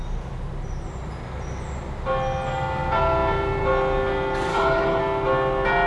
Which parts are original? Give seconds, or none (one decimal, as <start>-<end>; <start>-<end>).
0.0-4.5; 5.0-5.9